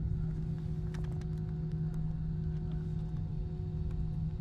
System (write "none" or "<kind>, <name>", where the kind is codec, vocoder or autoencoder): none